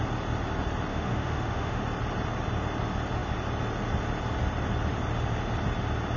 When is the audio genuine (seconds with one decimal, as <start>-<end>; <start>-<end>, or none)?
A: 0.0-0.9; 1.8-6.2